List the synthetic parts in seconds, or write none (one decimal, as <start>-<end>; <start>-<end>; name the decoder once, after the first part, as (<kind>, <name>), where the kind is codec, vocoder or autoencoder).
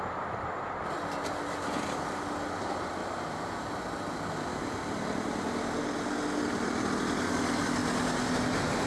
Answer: 3.0-3.7 (vocoder, BigVGAN v2); 4.5-5.4